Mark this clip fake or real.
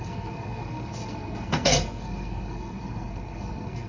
fake